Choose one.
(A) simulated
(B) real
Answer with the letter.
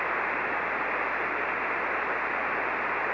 B